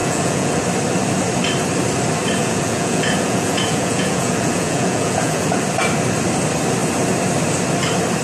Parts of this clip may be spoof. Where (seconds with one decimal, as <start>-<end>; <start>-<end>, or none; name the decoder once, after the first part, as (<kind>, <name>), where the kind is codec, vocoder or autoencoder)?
0.0-0.6 (vocoder, Vocos); 2.4-5.6